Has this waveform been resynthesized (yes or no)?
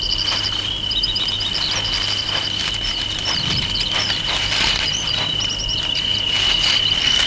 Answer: no